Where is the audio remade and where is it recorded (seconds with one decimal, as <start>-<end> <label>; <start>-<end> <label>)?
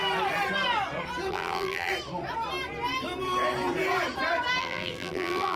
0.0-1.3 recorded; 1.3-1.9 remade; 1.9-4.6 recorded; 4.6-5.6 remade